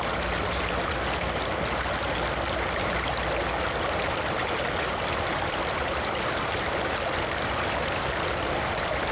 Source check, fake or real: real